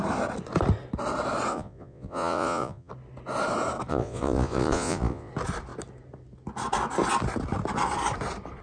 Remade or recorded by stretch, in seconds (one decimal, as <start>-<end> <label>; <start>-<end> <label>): 0.0-1.5 recorded; 1.5-2.9 remade; 2.9-3.9 recorded; 3.9-5.3 remade; 5.3-8.6 recorded